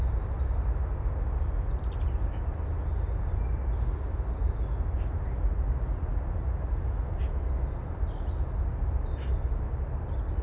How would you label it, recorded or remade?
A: recorded